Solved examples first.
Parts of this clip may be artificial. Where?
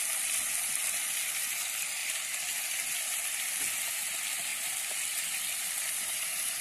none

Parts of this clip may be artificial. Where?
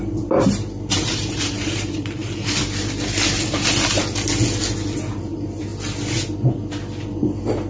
0.0-2.2 (vocoder, BigVGAN v2); 5.2-5.7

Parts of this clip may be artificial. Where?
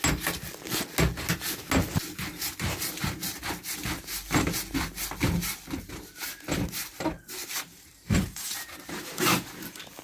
6.9-8.5 (vocoder, BigVGAN v2)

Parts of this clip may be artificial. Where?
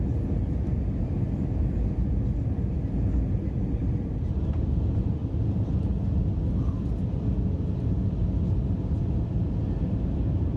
3.8-4.4 (vocoder, BigVGAN v2)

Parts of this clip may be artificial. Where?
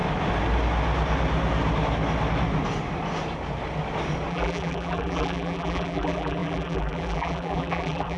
4.3-8.2 (vocoder, BigVGAN v2)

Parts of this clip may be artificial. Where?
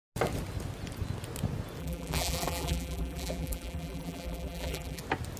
1.8-5.0 (vocoder, BigVGAN v2)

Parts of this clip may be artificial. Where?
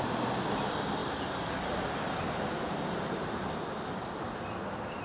1.0-3.5 (vocoder, BigVGAN v2)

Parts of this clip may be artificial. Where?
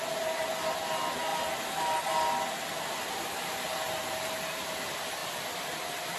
none